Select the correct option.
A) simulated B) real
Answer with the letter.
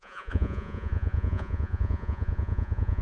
A